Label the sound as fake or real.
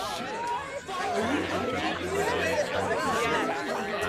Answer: real